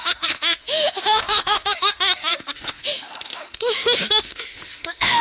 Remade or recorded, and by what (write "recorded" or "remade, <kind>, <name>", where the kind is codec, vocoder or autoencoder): remade, autoencoder, DAC-VAE